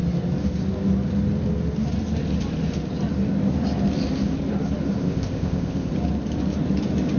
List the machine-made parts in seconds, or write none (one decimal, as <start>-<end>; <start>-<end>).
5.0-5.9